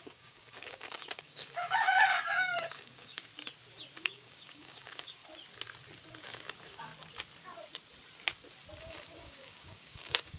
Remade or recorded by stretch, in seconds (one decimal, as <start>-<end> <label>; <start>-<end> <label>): 0.0-3.3 remade; 3.3-4.0 recorded; 4.0-5.2 remade; 5.2-6.2 recorded; 6.2-6.9 remade; 6.9-8.8 recorded; 8.8-10.4 remade

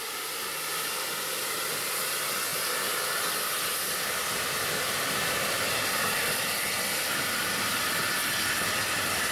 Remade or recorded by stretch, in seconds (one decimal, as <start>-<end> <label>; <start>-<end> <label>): 0.0-9.3 recorded